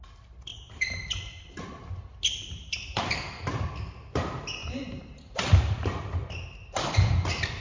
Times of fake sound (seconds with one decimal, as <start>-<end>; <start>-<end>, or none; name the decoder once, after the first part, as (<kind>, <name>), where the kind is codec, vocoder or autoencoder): 0.5-1.5 (vocoder, BigVGAN v2); 4.6-7.1